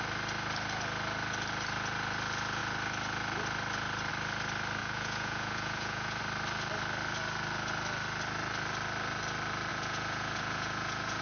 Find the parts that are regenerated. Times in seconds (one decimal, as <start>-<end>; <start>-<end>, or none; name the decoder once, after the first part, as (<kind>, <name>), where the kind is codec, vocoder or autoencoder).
4.8-6.2 (vocoder, Vocos); 9.7-11.2